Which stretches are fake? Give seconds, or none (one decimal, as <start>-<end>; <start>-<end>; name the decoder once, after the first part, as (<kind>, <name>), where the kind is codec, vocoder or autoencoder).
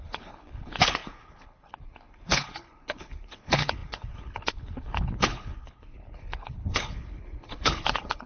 0.0-8.3 (codec, HILCodec)